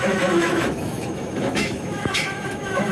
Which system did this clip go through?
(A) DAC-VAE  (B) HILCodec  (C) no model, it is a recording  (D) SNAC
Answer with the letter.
A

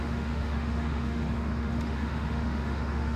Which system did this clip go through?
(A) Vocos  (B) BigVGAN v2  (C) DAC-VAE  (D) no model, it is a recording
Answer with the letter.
C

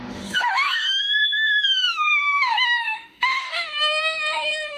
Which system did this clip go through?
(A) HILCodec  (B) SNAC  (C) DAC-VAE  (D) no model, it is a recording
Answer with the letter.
C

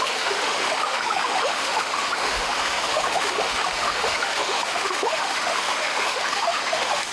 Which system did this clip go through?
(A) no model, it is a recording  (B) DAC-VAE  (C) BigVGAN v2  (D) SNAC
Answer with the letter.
B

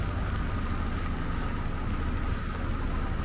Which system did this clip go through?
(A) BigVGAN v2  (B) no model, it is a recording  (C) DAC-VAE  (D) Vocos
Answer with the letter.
B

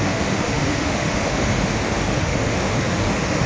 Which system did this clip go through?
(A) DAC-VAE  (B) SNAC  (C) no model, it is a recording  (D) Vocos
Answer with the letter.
A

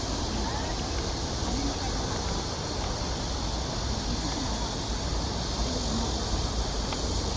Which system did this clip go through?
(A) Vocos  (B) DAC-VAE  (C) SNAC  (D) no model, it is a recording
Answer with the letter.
D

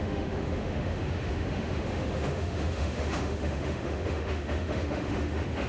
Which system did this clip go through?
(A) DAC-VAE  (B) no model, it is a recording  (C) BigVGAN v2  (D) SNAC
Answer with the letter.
A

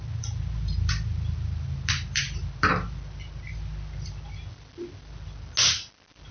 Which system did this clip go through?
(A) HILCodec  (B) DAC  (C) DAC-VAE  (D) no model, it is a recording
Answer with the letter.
D